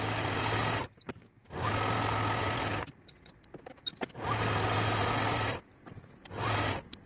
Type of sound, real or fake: real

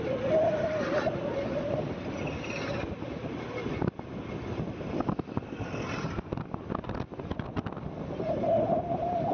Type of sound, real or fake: real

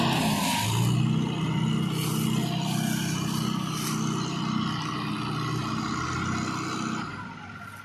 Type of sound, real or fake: real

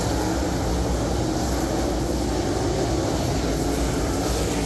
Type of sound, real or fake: real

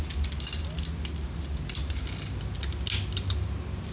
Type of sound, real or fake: real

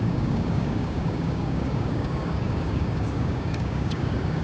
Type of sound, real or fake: fake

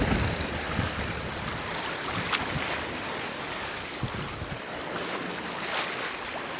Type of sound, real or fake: real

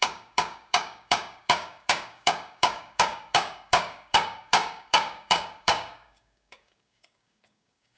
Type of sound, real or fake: fake